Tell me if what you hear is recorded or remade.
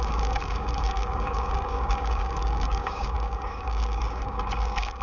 remade